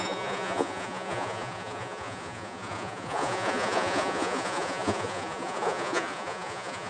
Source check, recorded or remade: remade